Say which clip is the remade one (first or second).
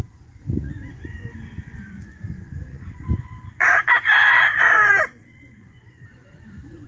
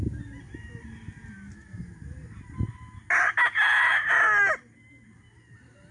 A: first